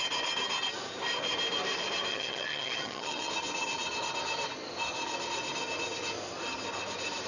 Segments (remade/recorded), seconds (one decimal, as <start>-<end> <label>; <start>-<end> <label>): 0.0-2.1 recorded; 2.1-3.3 remade; 3.3-7.3 recorded